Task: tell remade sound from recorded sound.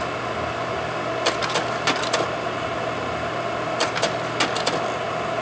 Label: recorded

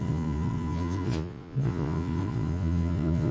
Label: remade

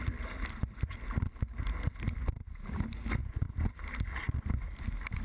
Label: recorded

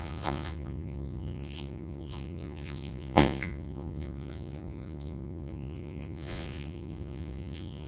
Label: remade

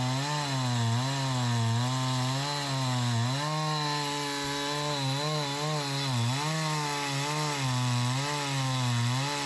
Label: recorded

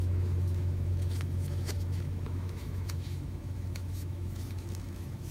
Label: remade